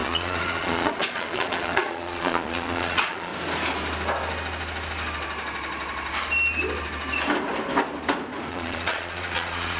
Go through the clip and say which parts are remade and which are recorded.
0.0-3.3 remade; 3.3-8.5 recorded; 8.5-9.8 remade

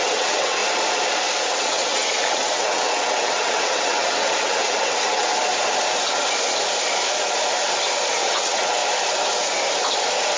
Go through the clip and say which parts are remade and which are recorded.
0.0-0.6 remade; 0.6-1.6 recorded; 1.6-5.3 remade; 5.3-8.1 recorded; 8.1-8.8 remade; 8.8-10.4 recorded

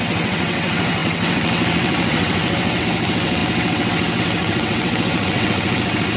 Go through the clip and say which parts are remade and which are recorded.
0.0-6.2 remade

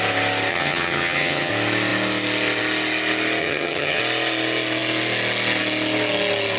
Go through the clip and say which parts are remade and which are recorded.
0.0-0.5 recorded; 0.5-1.5 remade; 1.5-3.4 recorded; 3.4-4.0 remade; 4.0-6.6 recorded

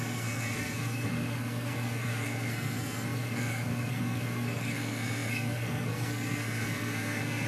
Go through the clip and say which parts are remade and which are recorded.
0.0-7.5 remade

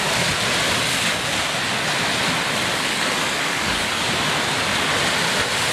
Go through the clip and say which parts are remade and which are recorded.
0.0-2.7 recorded; 2.7-4.1 remade; 4.1-5.7 recorded

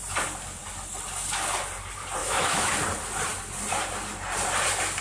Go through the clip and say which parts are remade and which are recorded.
0.0-2.2 recorded; 2.2-2.7 remade; 2.7-5.0 recorded